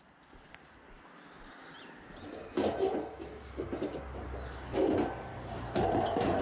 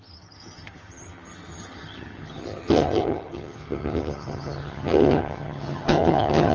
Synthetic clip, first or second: second